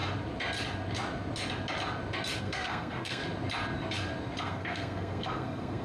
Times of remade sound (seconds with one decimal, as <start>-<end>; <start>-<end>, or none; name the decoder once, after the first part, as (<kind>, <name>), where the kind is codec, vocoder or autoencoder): 2.4-3.2 (codec, SNAC); 4.4-5.8